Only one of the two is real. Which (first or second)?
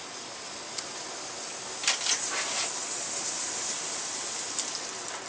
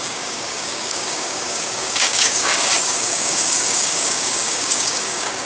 first